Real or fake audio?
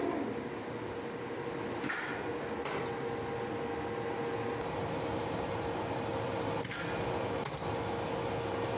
real